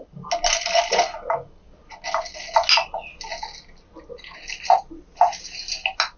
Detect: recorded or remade recorded